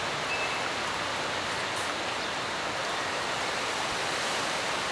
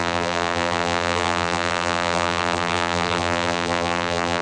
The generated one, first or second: second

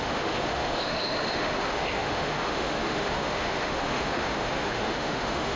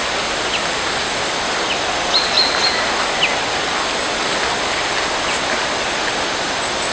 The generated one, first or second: first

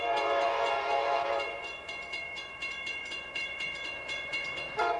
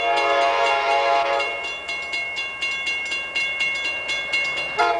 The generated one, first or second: first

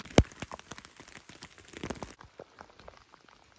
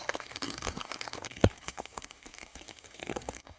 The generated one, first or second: second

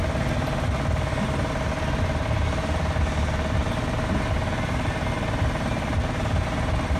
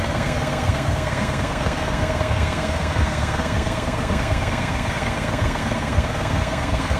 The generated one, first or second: second